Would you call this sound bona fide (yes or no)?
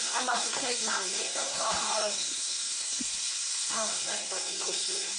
no